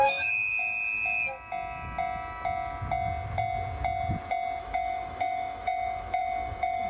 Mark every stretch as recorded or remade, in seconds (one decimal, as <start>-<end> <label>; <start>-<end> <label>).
0.0-0.5 remade; 0.5-4.6 recorded; 4.6-6.9 remade